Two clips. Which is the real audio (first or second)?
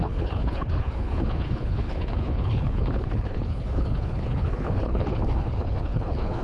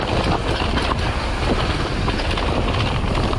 second